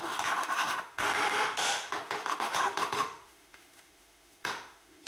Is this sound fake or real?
fake